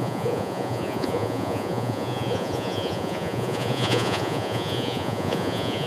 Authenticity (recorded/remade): remade